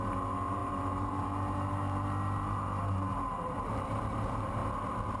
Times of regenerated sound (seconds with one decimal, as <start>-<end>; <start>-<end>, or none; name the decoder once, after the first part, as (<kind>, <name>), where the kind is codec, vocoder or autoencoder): 0.0-4.6 (vocoder, BigVGAN v2)